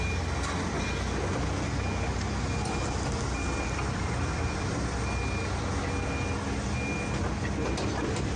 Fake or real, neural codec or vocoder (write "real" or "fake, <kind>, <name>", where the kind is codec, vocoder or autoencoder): real